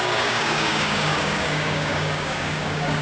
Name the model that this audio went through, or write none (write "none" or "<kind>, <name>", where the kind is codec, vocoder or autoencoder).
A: codec, DAC